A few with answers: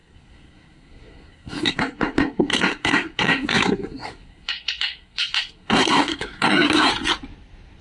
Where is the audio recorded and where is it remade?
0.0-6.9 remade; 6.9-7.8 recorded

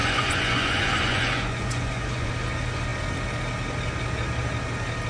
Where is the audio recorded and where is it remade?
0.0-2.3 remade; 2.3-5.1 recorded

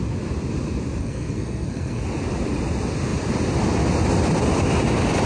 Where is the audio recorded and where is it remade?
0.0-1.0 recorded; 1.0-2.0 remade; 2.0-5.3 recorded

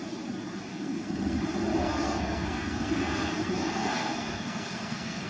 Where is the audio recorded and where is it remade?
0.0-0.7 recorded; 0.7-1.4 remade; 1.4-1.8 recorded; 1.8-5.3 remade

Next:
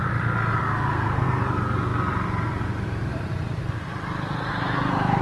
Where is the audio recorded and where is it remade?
0.0-0.9 recorded; 0.9-1.4 remade; 1.4-5.2 recorded

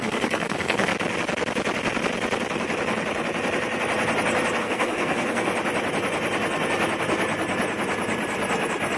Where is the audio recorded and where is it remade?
0.0-0.9 remade; 0.9-4.6 recorded; 4.6-5.5 remade; 5.5-9.0 recorded